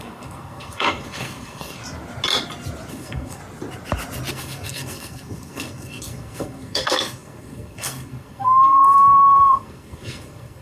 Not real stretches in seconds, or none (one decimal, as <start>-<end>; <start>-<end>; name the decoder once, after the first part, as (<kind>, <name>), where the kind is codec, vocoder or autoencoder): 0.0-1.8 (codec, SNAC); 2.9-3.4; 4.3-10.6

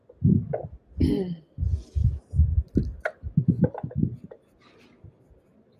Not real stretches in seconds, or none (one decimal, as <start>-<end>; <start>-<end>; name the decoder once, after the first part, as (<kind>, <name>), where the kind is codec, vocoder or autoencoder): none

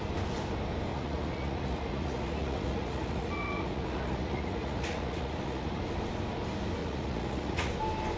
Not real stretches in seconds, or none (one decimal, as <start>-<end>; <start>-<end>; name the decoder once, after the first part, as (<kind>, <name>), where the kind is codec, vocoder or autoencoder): 0.9-5.8 (vocoder, Vocos); 6.8-7.7

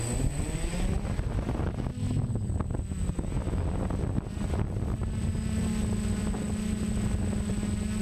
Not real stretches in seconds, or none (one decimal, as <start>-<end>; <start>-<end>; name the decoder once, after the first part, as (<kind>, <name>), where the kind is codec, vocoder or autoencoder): none

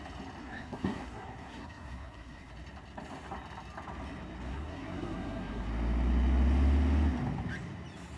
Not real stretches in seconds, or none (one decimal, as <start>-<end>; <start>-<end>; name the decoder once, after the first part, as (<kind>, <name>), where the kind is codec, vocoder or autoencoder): 0.4-2.5 (codec, SNAC); 4.5-5.7

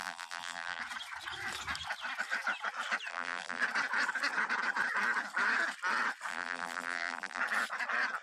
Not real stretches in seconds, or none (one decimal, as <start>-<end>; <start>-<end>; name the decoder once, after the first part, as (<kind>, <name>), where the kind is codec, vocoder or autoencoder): 0.0-0.8 (vocoder, BigVGAN v2); 3.1-3.6; 6.3-7.4